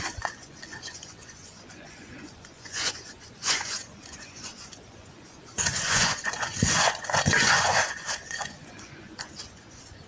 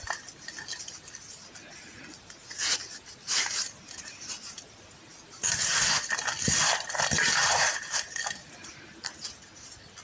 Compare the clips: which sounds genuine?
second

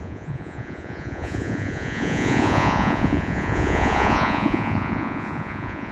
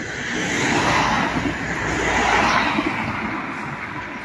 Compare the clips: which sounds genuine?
second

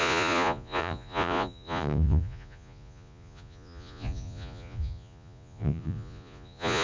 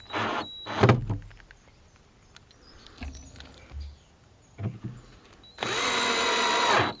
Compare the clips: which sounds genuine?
second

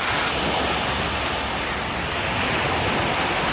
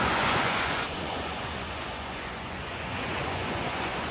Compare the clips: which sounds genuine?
first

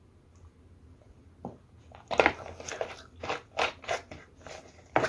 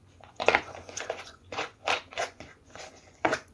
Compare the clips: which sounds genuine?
first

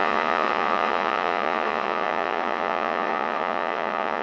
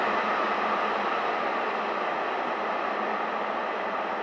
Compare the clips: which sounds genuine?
second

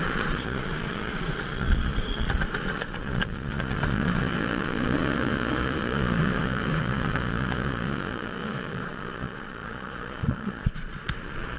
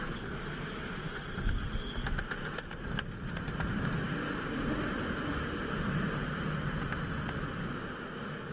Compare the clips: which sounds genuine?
second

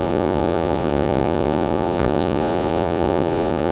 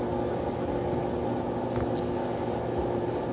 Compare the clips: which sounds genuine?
second